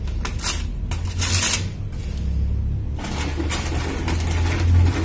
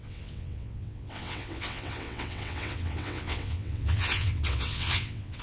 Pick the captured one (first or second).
first